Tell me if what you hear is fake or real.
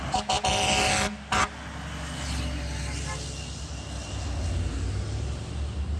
real